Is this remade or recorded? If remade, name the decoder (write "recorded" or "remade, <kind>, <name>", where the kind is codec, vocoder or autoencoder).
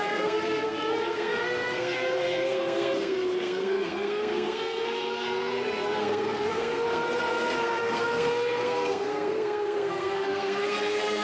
remade, codec, SNAC